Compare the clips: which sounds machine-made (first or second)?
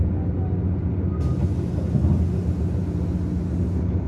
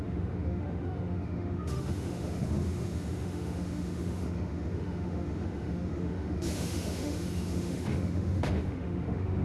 second